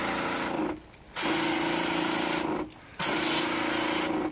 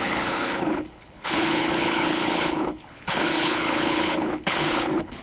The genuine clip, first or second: first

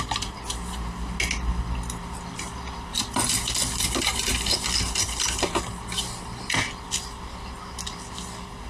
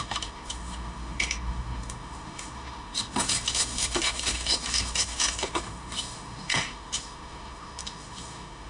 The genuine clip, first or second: first